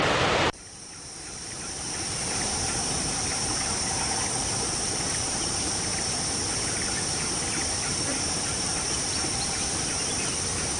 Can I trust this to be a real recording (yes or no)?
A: no